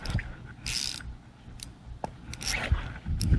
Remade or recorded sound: recorded